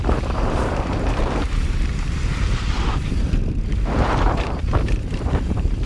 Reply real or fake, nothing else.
fake